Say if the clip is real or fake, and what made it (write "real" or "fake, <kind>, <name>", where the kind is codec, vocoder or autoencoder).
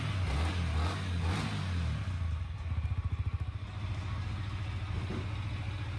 real